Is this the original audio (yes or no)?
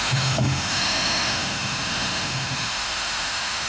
no